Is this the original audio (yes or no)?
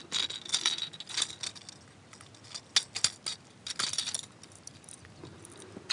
yes